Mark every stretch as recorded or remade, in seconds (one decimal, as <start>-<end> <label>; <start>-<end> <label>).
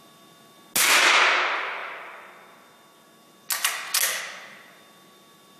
0.0-5.6 recorded